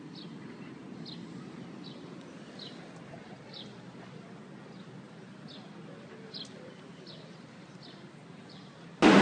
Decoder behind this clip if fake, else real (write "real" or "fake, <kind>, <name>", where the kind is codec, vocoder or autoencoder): real